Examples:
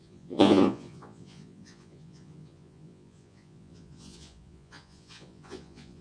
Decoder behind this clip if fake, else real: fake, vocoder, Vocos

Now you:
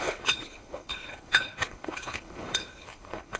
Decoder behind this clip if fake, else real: fake, codec, HILCodec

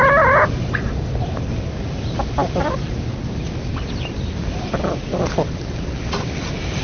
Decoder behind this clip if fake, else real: real